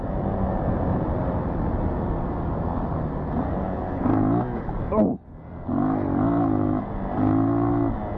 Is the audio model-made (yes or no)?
no